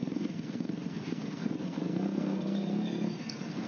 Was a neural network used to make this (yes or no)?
yes